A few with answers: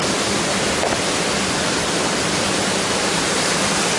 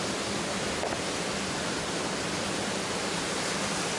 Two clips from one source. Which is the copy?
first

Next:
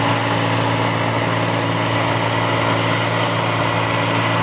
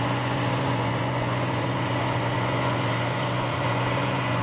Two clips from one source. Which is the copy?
second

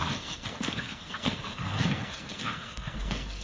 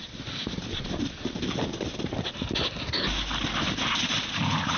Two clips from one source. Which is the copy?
first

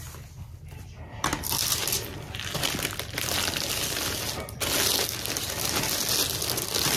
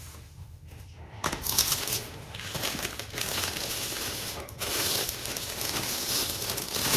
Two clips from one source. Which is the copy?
second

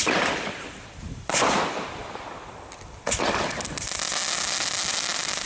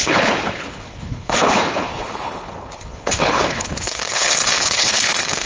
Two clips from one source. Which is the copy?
second